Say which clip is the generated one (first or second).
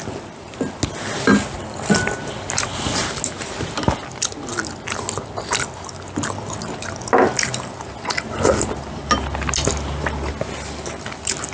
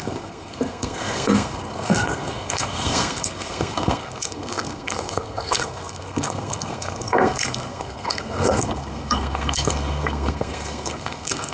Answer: second